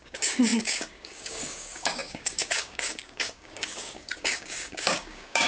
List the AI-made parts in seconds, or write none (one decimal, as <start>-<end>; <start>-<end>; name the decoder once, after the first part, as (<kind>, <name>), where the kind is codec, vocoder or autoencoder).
0.0-5.5 (codec, DAC)